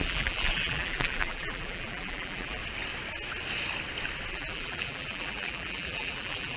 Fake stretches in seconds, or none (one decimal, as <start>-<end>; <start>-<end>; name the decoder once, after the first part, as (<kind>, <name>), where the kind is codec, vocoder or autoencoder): 0.0-2.6 (vocoder, BigVGAN v2); 4.3-6.6

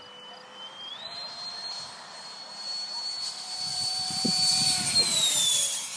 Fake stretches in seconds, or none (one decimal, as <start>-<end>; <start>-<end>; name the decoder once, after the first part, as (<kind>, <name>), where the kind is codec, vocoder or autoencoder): 0.9-3.3 (vocoder, BigVGAN v2); 3.7-4.8

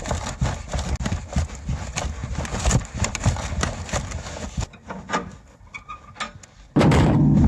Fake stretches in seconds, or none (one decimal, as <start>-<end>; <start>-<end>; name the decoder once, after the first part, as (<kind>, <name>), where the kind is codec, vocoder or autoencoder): 2.2-3.1 (vocoder, BigVGAN v2)

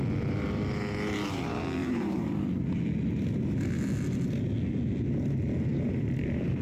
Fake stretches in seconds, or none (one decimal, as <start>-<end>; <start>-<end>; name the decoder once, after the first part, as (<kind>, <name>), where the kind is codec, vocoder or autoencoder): 1.8-2.4 (vocoder, BigVGAN v2); 5.7-6.6

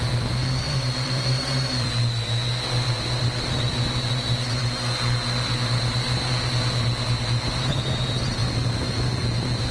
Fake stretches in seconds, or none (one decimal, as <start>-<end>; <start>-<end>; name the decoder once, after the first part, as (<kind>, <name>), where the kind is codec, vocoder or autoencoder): 0.4-1.9 (vocoder, BigVGAN v2); 8.4-9.1

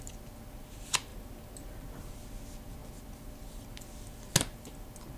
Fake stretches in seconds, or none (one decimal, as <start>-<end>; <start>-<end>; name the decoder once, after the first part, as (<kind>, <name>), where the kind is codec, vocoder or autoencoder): none

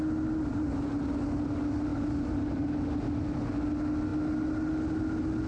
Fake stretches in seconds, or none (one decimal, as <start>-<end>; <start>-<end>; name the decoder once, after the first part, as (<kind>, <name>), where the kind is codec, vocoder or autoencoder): 1.9-2.6 (vocoder, BigVGAN v2)